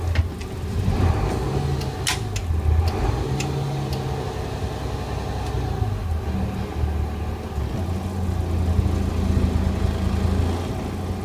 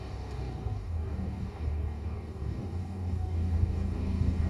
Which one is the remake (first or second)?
second